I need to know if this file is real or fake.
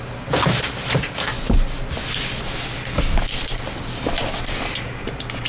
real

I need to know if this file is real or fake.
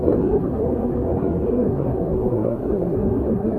fake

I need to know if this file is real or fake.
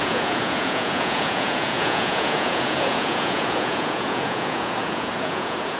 fake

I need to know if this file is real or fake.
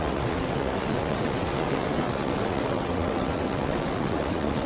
fake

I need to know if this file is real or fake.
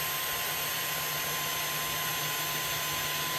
real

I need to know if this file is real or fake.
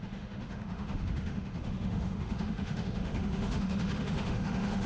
fake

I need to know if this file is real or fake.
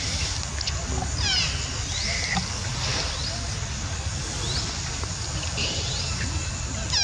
real